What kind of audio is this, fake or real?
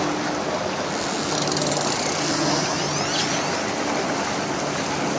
real